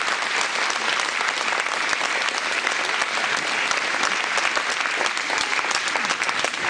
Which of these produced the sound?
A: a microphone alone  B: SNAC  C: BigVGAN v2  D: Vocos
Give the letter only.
A